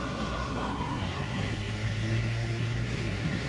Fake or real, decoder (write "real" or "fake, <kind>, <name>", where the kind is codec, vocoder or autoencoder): fake, codec, SNAC